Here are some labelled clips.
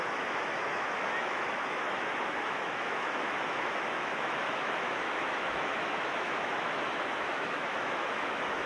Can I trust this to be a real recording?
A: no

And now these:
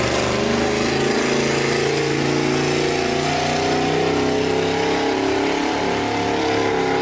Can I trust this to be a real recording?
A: yes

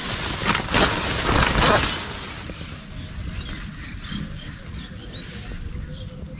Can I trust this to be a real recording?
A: yes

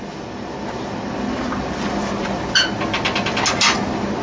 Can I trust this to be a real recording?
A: yes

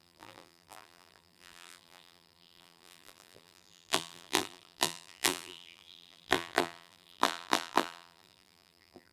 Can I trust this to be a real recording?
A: no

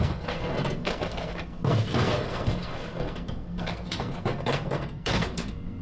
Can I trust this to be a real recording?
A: no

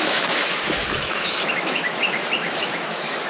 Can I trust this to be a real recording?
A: no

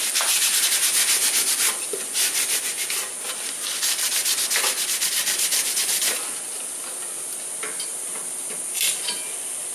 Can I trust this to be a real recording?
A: yes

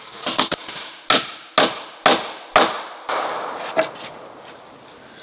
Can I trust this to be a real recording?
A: yes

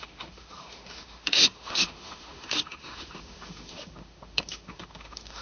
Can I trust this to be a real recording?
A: no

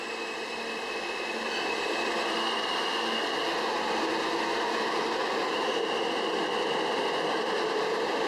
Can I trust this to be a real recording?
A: yes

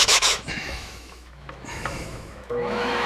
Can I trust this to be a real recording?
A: no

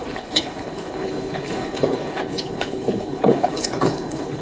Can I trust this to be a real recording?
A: no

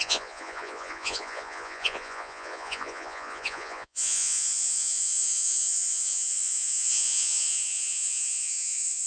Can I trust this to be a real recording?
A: no